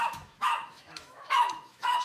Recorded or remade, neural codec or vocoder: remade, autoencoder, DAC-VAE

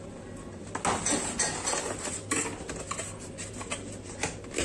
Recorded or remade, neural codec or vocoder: recorded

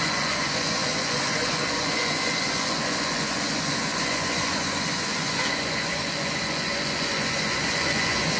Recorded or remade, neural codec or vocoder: remade, vocoder, Vocos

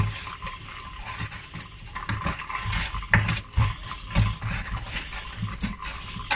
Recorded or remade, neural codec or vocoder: recorded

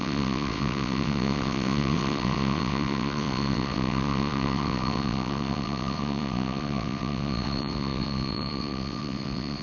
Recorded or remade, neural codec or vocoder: remade, vocoder, WaveNeXt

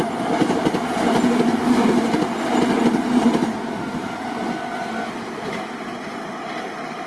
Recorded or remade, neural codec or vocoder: recorded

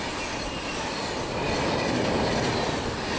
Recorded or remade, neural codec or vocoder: recorded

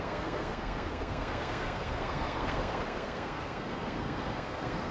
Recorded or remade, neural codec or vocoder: remade, codec, SNAC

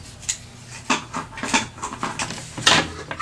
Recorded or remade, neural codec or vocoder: recorded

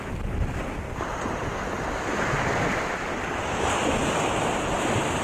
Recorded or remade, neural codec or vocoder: recorded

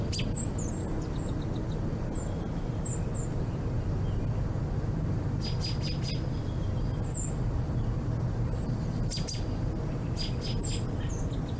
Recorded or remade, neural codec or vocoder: recorded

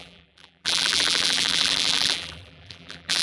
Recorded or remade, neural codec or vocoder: remade, vocoder, BigVGAN v2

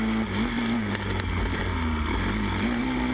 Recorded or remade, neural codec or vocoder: recorded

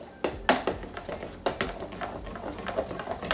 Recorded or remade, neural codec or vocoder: recorded